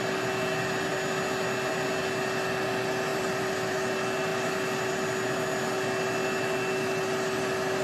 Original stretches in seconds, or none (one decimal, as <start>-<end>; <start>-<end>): 0.0-3.1; 3.7-4.3; 4.9-7.8